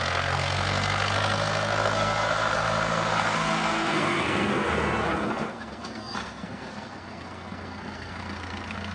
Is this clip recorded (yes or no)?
no